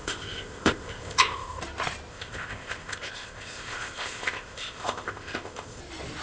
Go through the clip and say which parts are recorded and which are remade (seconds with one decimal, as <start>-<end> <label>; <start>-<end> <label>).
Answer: 0.0-1.6 remade; 1.6-2.1 recorded; 2.1-5.8 remade; 5.8-6.2 recorded